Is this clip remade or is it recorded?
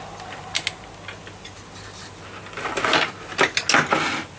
recorded